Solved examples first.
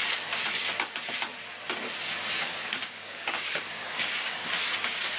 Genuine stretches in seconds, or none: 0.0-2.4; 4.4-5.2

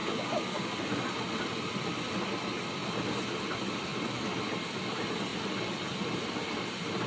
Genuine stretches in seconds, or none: 0.7-7.1

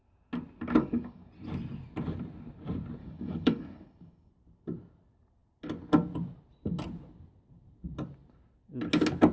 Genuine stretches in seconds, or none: 0.0-0.8; 1.3-3.0; 4.3-9.3

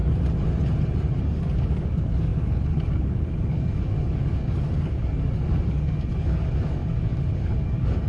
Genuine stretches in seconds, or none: 0.0-1.2

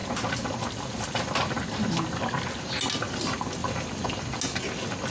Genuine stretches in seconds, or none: 0.0-5.1

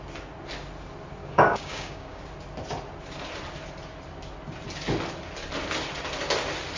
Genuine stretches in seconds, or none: 0.0-1.2; 2.2-6.8

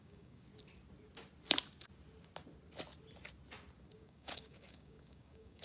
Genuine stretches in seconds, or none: 0.5-3.9